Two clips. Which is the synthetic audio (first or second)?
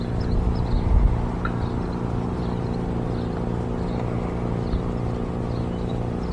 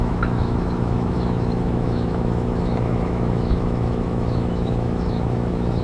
second